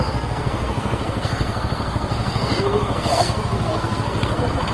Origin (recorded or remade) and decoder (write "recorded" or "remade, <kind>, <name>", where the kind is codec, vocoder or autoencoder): remade, codec, SNAC